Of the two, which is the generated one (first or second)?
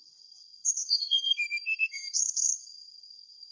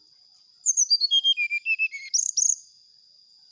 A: first